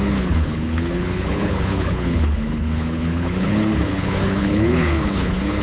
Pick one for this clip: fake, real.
fake